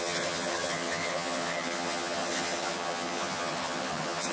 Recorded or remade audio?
remade